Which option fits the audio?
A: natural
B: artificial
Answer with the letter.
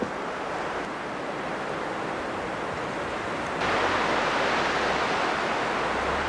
A